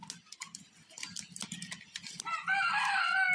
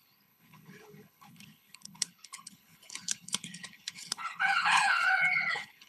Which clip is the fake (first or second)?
second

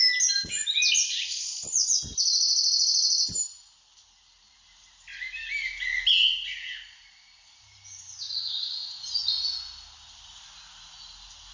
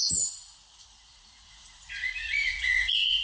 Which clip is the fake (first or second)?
second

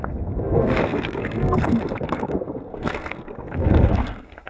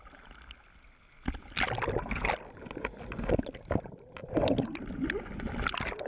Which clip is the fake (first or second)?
first